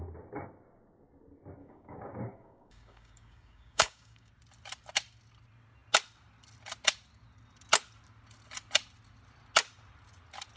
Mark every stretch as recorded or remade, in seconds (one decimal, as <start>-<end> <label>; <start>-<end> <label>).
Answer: 0.0-1.6 recorded; 1.6-4.3 remade; 4.3-10.6 recorded